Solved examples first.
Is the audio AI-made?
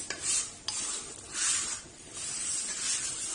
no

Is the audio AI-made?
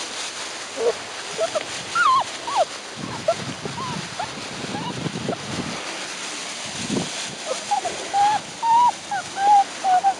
no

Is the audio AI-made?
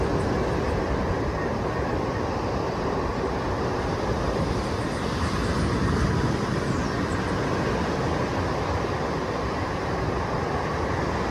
no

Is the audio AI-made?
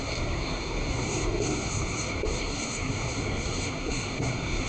yes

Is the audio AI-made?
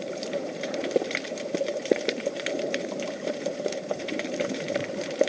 yes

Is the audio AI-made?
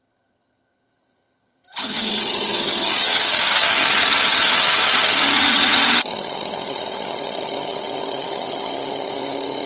yes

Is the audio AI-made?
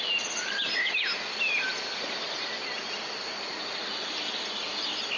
no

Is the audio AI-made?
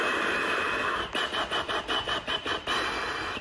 no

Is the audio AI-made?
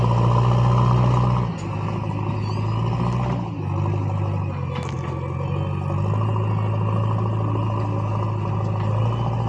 no